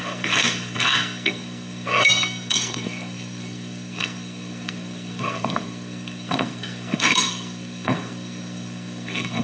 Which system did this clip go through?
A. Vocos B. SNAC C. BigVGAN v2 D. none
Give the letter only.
B